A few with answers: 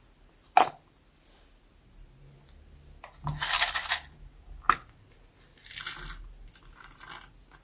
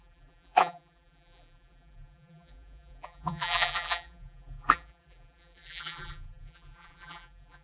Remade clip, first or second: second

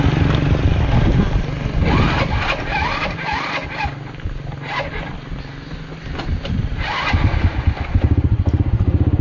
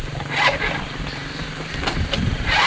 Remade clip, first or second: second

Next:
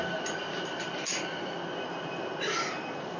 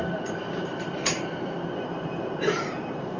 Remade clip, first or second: second